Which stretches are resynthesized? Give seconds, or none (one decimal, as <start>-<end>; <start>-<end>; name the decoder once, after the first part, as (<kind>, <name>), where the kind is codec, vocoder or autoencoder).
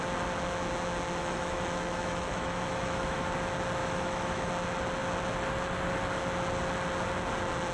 1.2-3.3 (autoencoder, DAC-VAE); 3.8-4.5